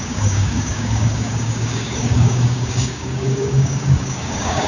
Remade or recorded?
remade